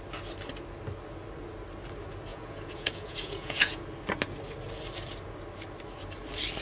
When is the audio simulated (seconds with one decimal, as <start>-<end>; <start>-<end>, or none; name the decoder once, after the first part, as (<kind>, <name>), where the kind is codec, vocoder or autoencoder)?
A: 2.3-3.8 (vocoder, Vocos)